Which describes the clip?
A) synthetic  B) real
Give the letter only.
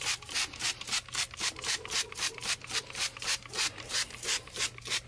A